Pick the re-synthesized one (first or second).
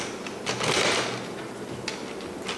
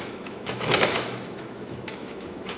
second